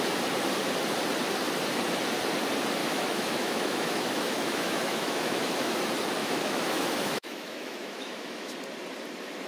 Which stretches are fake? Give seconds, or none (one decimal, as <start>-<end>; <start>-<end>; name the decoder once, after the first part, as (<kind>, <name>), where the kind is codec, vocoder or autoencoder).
2.8-5.8 (autoencoder, DAC-VAE); 6.2-8.5